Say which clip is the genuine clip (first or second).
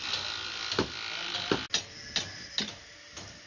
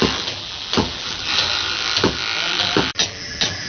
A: first